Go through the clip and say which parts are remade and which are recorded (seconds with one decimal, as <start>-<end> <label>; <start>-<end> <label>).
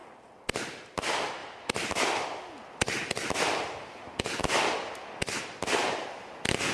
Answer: 0.0-6.7 recorded